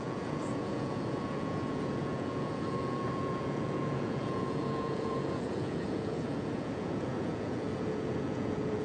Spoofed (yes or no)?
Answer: yes